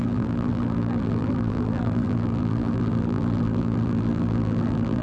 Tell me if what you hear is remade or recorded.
remade